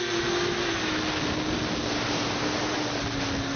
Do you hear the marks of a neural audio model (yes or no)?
no